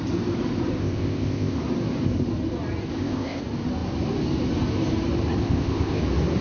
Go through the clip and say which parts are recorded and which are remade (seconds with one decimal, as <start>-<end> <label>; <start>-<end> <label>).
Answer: 0.0-0.8 recorded; 0.8-1.6 remade; 1.6-2.9 recorded; 2.9-3.4 remade; 3.4-5.4 recorded; 5.4-6.0 remade; 6.0-6.4 recorded